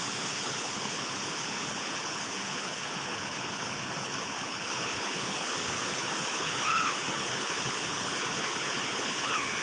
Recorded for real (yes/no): no